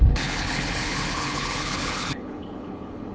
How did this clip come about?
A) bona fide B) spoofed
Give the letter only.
B